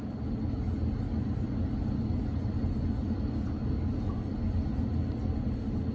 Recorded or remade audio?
recorded